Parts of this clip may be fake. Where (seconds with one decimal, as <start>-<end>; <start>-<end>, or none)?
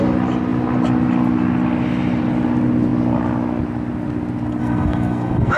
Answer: 4.6-5.6